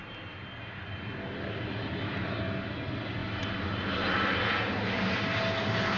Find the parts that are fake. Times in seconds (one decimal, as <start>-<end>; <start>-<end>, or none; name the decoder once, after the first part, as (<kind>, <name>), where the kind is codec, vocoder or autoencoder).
none